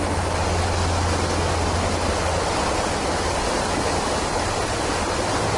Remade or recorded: recorded